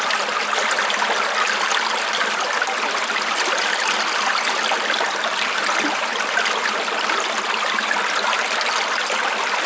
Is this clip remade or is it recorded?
recorded